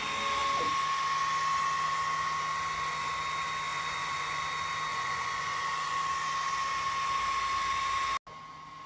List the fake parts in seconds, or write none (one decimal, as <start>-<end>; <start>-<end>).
3.7-4.4; 4.9-6.0